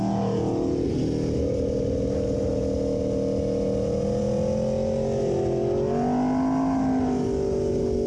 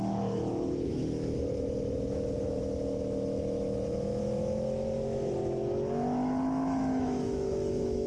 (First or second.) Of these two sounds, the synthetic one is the second